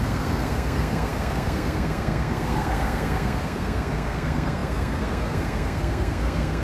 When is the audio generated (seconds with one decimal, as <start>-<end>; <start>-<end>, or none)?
0.0-6.6